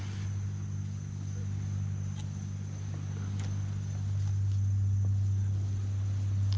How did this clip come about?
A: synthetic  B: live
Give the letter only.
B